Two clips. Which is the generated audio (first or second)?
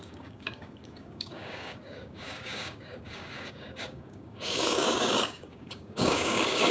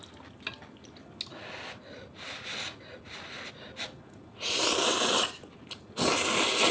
first